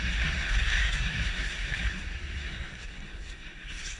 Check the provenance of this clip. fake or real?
fake